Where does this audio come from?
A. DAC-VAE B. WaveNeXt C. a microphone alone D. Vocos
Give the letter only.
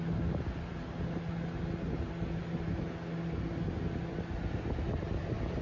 C